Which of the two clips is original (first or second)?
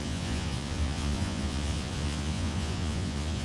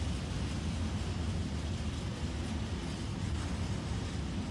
second